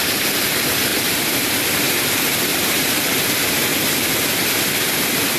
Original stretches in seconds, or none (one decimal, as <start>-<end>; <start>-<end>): 0.0-0.9; 1.5-2.5; 3.2-5.4